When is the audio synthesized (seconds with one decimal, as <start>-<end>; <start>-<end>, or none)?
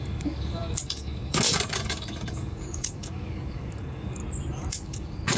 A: 0.0-4.2; 4.7-5.4